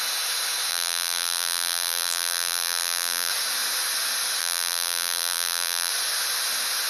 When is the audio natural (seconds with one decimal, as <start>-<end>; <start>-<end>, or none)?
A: 0.0-0.7; 3.3-4.4; 5.9-6.9